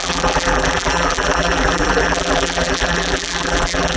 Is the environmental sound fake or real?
fake